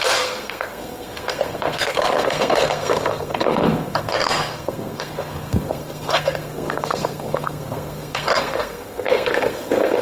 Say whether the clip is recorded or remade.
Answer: remade